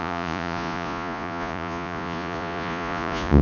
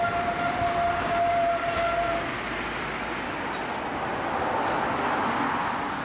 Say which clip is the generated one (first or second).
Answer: first